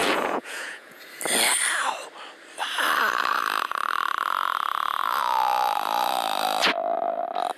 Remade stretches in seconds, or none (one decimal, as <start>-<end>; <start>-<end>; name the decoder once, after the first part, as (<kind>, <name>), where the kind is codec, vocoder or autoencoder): 0.0-1.0 (vocoder, Vocos)